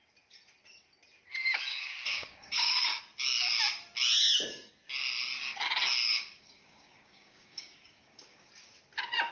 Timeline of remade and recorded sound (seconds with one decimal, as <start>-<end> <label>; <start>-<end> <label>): 0.0-1.7 recorded; 1.7-3.0 remade; 3.0-6.0 recorded; 6.0-8.5 remade; 8.5-9.3 recorded

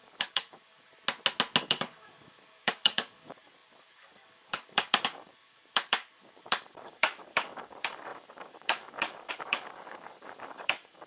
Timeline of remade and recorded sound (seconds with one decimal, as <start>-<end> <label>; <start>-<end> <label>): 0.0-0.9 remade; 0.9-1.6 recorded; 1.6-11.1 remade

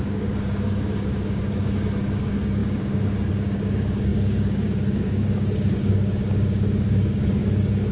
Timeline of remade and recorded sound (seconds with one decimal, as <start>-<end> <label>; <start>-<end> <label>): 0.0-7.9 remade

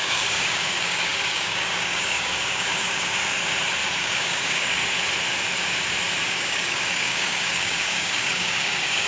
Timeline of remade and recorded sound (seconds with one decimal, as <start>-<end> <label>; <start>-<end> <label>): 0.0-3.2 remade; 3.2-4.0 recorded; 4.0-4.8 remade; 4.8-6.3 recorded; 6.3-9.1 remade